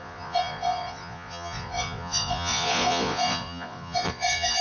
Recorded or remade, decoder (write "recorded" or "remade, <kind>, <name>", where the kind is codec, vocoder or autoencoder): remade, vocoder, Vocos